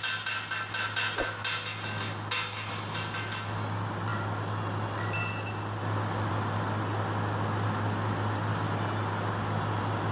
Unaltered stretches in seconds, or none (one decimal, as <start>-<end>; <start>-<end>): 0.0-10.1